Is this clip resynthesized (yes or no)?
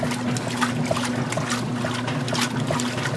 no